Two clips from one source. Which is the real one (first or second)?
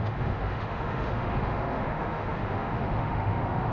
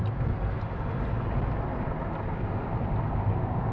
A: second